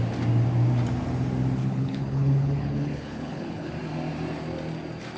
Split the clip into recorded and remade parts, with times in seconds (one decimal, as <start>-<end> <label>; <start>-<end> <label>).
0.0-1.6 recorded; 1.6-3.7 remade; 3.7-5.2 recorded